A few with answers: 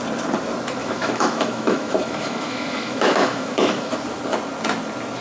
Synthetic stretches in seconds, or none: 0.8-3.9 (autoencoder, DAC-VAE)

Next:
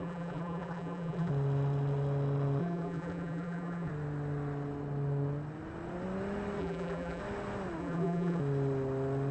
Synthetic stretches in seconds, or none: 0.0-1.3 (vocoder, BigVGAN v2); 2.6-3.9; 6.6-7.2; 7.8-8.4

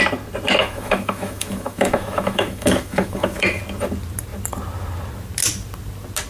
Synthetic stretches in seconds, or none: 0.6-3.6 (autoencoder, DAC-VAE)

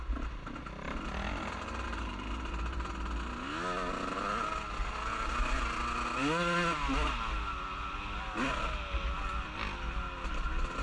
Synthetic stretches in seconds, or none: 1.9-2.9 (vocoder, BigVGAN v2)

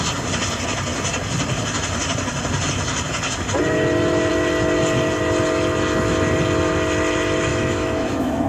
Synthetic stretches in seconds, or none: 7.5-8.5 (autoencoder, DAC-VAE)